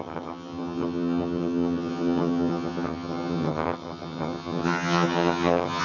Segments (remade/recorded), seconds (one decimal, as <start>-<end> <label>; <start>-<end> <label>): 0.0-5.8 remade